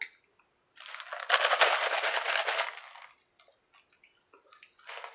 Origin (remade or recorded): recorded